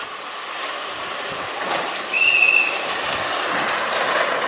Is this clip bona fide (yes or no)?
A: yes